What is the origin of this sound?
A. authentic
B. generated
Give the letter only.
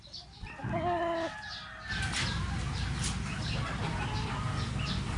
A